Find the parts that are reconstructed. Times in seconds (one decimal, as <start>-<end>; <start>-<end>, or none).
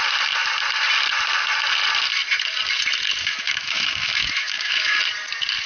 3.2-5.0